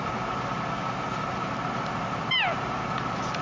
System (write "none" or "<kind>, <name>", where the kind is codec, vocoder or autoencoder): none